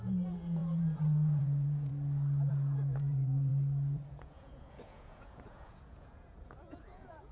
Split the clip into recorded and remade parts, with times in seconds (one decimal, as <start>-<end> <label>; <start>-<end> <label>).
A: 0.0-1.9 remade; 1.9-2.5 recorded; 2.5-3.5 remade; 3.5-4.1 recorded; 4.1-7.3 remade